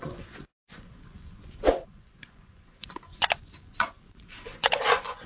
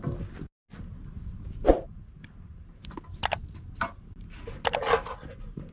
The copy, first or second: first